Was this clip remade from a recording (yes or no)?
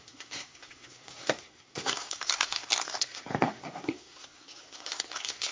yes